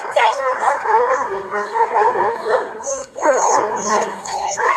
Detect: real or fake fake